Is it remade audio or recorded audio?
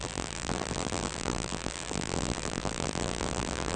remade